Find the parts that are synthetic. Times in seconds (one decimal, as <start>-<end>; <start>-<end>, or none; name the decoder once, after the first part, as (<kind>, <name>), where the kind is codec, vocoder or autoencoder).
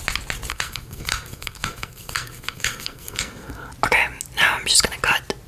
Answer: 0.5-3.7 (codec, SNAC)